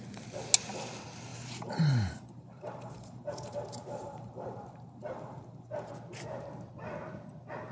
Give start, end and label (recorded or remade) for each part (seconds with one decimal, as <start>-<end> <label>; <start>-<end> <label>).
0.0-1.3 recorded; 1.3-5.9 remade; 5.9-7.7 recorded